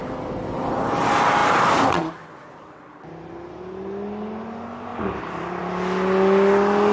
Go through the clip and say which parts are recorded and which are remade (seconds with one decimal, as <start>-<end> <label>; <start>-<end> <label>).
0.0-0.7 remade; 0.7-1.4 recorded; 1.4-2.1 remade; 2.1-4.9 recorded; 4.9-5.6 remade; 5.6-6.9 recorded